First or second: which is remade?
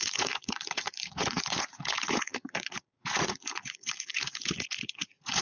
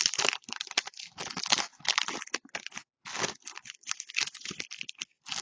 first